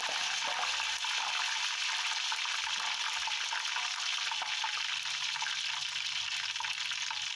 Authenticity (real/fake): real